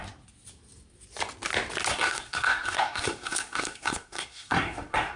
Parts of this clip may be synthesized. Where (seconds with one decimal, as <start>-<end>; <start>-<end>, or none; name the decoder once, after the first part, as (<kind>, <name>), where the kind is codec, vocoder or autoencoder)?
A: 1.9-5.2 (codec, SNAC)